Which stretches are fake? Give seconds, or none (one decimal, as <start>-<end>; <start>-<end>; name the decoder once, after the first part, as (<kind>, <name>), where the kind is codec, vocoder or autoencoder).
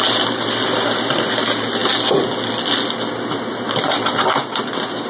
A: none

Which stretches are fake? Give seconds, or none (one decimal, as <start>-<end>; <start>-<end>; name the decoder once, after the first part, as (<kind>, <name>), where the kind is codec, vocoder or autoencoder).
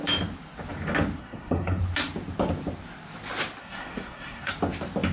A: 1.2-1.8 (codec, SNAC); 3.6-4.5